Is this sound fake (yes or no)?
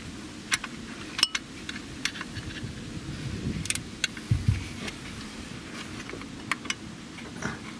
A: no